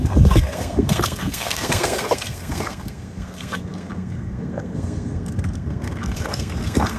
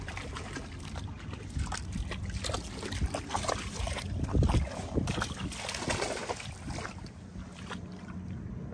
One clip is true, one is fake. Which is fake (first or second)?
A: first